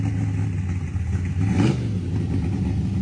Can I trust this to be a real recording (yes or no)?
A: yes